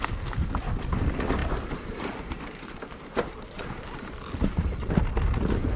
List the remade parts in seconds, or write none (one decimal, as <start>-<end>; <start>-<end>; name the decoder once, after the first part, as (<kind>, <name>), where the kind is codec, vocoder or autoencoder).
1.4-4.9 (vocoder, BigVGAN v2)